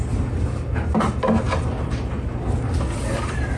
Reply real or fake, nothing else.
real